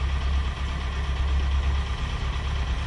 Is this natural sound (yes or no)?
yes